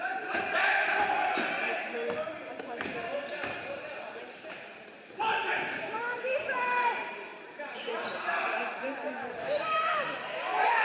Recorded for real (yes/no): no